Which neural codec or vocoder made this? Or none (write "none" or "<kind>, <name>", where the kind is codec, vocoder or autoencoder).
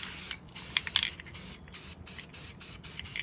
none